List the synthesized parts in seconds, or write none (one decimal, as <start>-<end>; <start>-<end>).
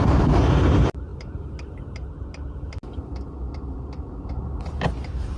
none